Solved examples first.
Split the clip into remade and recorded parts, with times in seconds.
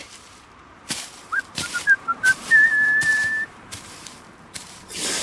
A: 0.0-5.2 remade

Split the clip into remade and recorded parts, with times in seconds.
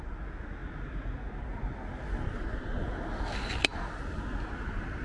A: 0.0-5.0 recorded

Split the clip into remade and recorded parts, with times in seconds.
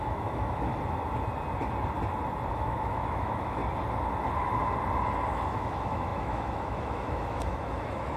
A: 0.0-0.7 remade; 0.7-2.5 recorded; 2.5-3.6 remade; 3.6-5.3 recorded; 5.3-8.2 remade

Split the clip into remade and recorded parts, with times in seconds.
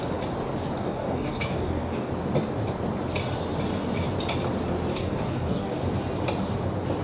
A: 0.0-0.8 recorded; 0.8-2.1 remade; 2.1-4.9 recorded; 4.9-5.8 remade; 5.8-7.0 recorded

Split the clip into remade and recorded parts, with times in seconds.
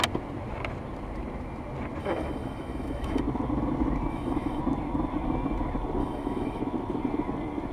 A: 0.0-2.0 recorded; 2.0-3.2 remade; 3.2-4.1 recorded; 4.1-4.6 remade; 4.6-6.0 recorded; 6.0-6.6 remade; 6.6-7.7 recorded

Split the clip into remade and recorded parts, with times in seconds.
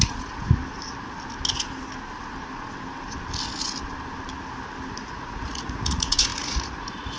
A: 0.0-0.6 remade; 0.6-4.9 recorded; 4.9-7.2 remade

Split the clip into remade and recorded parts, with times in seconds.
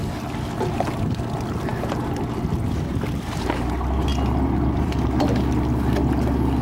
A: 0.0-6.6 recorded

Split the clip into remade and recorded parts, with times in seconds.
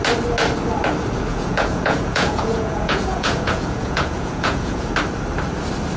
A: 0.0-1.3 recorded; 1.3-4.9 remade; 4.9-6.0 recorded